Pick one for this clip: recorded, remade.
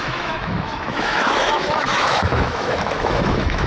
remade